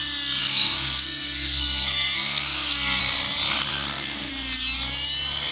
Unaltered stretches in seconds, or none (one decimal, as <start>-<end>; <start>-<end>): 0.0-0.4; 3.0-3.7; 4.3-5.5